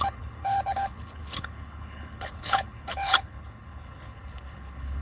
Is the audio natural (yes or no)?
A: no